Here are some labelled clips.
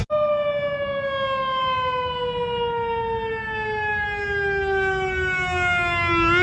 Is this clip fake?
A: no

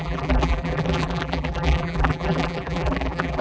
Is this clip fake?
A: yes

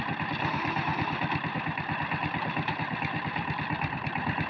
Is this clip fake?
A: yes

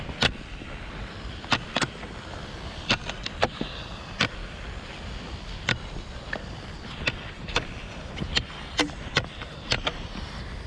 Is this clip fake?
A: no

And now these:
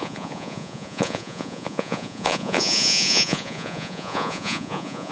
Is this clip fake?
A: yes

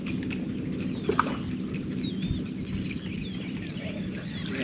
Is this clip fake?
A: no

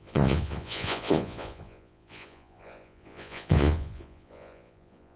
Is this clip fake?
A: yes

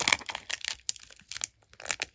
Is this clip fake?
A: no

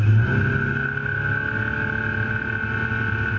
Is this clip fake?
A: no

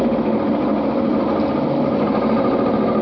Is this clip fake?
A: no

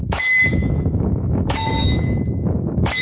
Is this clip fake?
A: yes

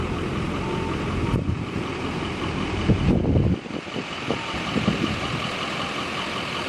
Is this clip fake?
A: no